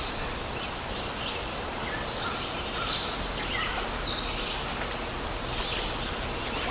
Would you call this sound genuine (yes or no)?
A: yes